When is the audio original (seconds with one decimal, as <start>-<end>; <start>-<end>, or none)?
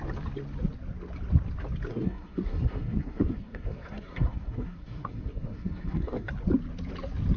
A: 0.0-1.9; 6.3-7.4